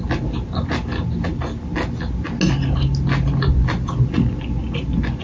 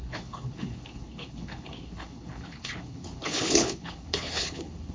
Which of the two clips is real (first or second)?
first